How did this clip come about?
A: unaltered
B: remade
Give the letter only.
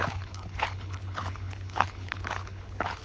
B